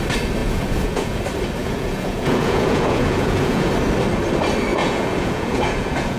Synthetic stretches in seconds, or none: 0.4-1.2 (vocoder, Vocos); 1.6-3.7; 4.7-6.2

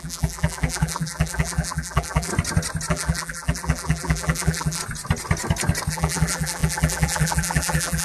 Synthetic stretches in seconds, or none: 0.0-2.3 (vocoder, BigVGAN v2); 2.9-4.8; 5.9-8.0

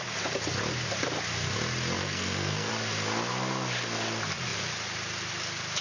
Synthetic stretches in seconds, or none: 2.0-2.7 (codec, SNAC)